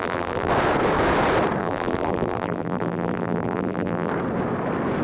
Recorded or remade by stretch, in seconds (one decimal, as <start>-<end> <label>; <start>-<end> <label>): 0.0-0.5 remade; 0.5-1.6 recorded; 1.6-4.1 remade; 4.1-5.0 recorded